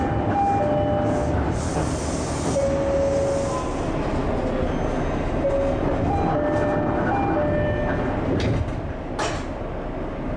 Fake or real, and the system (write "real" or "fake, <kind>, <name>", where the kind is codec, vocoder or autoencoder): real